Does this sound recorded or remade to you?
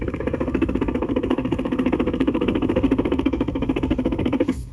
remade